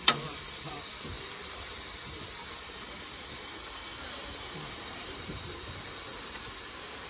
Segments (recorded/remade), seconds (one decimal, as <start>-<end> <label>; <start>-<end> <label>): 0.0-2.4 remade; 2.4-4.7 recorded; 4.7-6.1 remade; 6.1-7.1 recorded